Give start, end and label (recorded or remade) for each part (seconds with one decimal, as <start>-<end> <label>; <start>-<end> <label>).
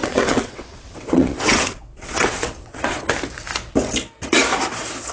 0.0-3.1 remade; 3.1-5.1 recorded